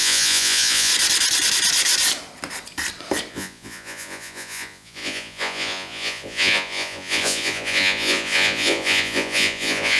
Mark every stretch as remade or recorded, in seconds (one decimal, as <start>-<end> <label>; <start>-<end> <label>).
0.0-0.9 remade; 0.9-3.3 recorded; 3.3-10.0 remade